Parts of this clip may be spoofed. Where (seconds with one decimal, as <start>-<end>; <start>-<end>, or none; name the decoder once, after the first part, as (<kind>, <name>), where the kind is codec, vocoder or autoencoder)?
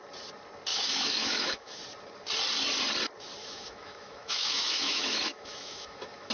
0.7-1.8 (autoencoder, DAC-VAE); 3.4-6.3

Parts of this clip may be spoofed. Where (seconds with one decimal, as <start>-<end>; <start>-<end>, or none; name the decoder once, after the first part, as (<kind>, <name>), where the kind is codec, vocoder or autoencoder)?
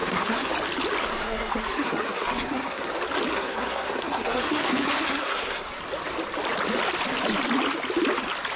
0.0-0.5 (codec, SNAC); 1.0-2.9; 3.3-5.8